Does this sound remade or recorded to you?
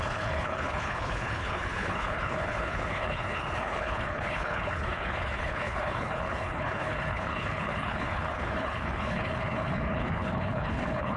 remade